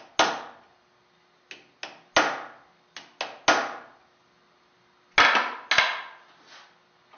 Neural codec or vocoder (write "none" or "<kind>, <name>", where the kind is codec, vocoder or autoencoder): none